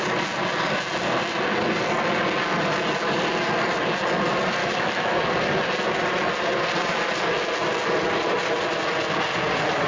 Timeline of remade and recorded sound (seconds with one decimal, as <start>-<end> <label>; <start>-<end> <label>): 0.0-4.6 recorded; 4.6-5.2 remade; 5.2-9.9 recorded